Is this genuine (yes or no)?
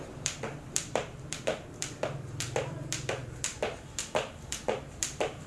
no